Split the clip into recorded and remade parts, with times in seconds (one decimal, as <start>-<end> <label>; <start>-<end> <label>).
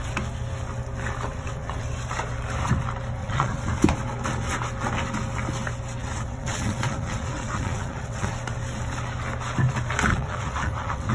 0.0-1.3 recorded; 1.3-1.8 remade; 1.8-3.2 recorded; 3.2-3.7 remade; 3.7-6.0 recorded; 6.0-8.3 remade; 8.3-10.1 recorded; 10.1-11.1 remade